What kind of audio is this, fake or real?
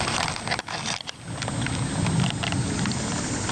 real